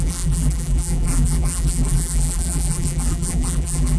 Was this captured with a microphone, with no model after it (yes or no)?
no